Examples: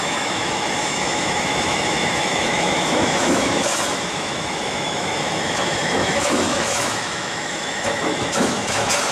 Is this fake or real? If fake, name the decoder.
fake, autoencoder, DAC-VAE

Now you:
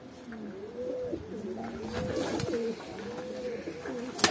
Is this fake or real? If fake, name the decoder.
real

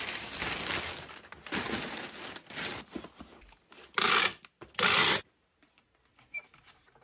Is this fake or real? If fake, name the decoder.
real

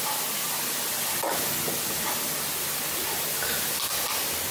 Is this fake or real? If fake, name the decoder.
real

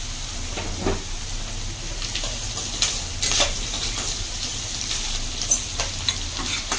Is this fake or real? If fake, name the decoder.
real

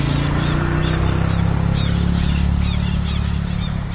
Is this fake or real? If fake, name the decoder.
real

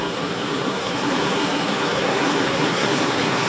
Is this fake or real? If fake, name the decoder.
fake, codec, SNAC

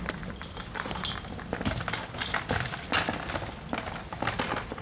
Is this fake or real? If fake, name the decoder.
real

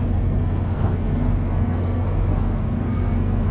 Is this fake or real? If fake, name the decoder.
fake, codec, SNAC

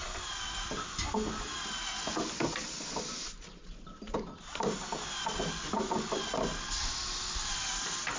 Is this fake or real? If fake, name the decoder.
real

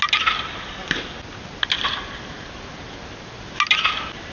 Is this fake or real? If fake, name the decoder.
real